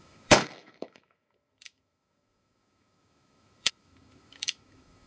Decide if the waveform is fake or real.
fake